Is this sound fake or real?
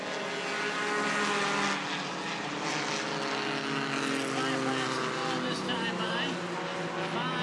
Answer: real